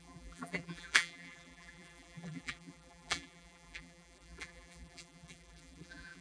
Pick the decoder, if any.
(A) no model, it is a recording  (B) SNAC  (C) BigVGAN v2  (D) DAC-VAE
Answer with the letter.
C